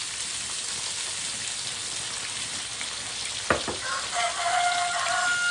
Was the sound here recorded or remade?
recorded